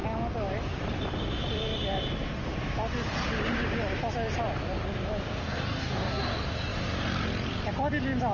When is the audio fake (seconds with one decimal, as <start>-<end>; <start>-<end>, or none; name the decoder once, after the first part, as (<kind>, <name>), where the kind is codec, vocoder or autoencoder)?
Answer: 5.4-6.2 (codec, DAC)